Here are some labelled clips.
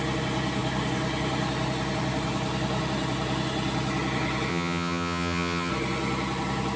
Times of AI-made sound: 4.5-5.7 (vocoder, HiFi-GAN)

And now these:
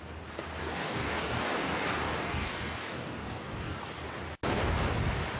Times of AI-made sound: 0.6-3.8 (codec, DAC)

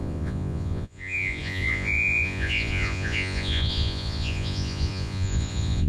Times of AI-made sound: 0.0-5.9 (vocoder, Vocos)

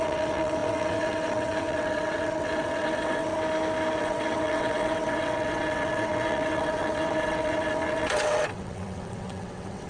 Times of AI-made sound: 0.0-3.3 (vocoder, WaveNeXt); 4.0-9.9

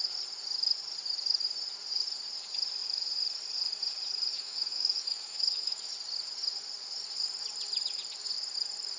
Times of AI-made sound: 4.3-5.9 (autoencoder, DAC-VAE)